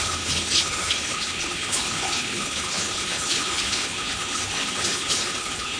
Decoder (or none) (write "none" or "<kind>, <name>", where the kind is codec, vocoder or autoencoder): codec, HILCodec